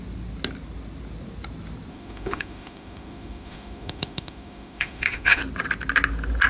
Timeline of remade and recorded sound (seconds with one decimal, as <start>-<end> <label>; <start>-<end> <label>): 0.0-1.9 recorded; 1.9-5.4 remade; 5.4-6.5 recorded